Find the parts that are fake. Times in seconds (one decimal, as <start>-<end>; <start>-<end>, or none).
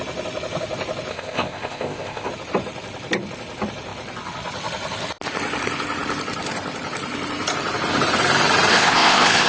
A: 1.1-2.3; 8.7-9.5